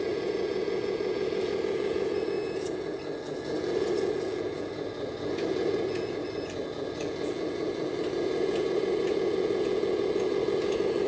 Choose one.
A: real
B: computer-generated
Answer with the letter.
B